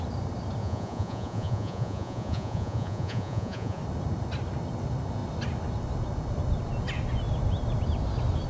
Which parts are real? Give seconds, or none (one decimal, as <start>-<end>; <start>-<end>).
0.0-0.6; 3.8-8.5